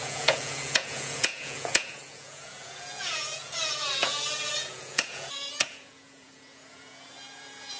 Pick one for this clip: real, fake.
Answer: fake